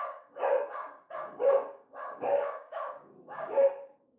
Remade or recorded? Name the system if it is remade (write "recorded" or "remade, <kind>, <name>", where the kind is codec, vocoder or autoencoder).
remade, codec, DAC